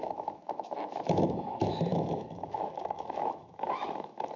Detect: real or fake fake